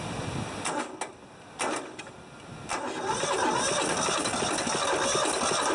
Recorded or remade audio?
recorded